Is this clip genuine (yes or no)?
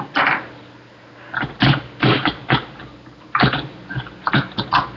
yes